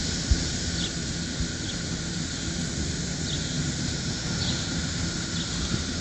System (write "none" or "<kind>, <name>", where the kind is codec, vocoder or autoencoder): none